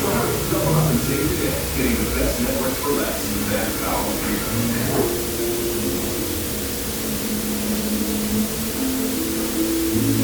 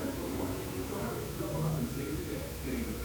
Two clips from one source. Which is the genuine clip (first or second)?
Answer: first